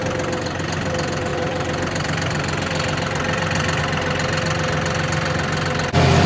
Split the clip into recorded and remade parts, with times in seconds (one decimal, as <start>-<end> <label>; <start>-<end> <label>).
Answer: 0.0-1.3 recorded; 1.3-3.8 remade; 3.8-6.3 recorded